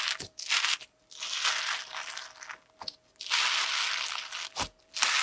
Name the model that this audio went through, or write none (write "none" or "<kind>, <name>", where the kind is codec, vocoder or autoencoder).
none